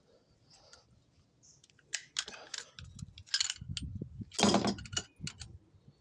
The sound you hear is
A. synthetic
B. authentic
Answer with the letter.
B